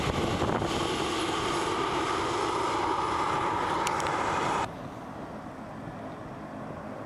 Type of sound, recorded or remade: recorded